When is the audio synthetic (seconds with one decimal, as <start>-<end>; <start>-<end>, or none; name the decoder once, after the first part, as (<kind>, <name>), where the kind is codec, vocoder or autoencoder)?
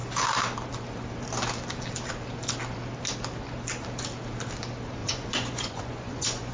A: 5.0-6.5 (vocoder, Vocos)